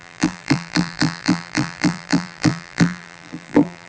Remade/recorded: remade